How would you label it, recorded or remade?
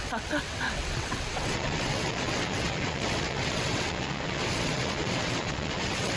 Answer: remade